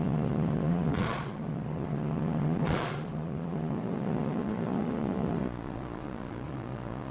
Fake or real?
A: fake